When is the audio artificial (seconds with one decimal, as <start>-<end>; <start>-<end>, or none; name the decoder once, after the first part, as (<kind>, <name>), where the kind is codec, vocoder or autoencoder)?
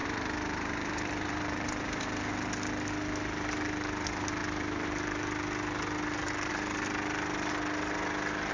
0.0-2.3 (vocoder, BigVGAN v2)